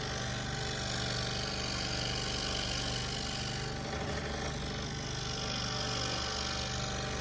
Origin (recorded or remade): recorded